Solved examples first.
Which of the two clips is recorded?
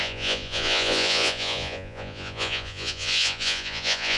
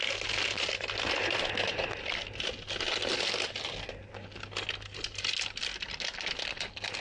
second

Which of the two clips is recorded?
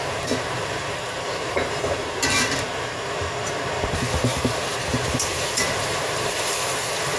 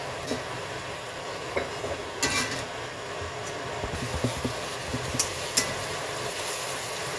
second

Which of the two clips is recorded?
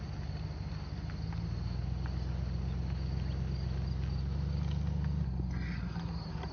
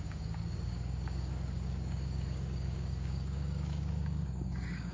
first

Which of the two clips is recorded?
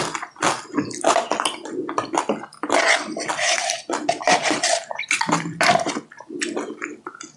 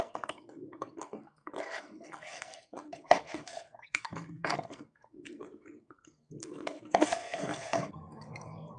first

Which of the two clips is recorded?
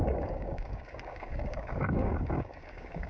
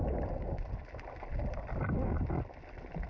second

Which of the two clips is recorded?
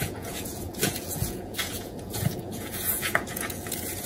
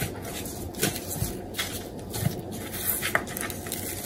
second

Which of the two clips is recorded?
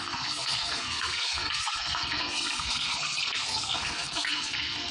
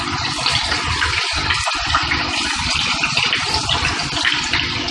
second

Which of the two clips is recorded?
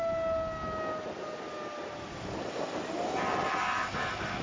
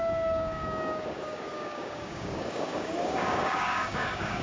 first